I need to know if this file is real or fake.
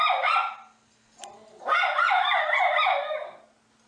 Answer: real